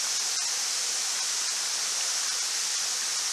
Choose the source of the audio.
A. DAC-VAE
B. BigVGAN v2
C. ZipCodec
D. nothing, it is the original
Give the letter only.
D